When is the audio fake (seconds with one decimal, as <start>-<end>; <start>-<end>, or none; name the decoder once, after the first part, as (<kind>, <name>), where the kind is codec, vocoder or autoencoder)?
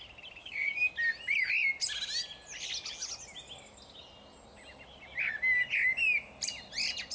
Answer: 0.4-0.9 (codec, DAC)